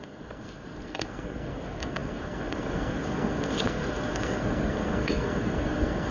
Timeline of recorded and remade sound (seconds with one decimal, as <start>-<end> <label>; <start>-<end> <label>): 0.0-6.1 remade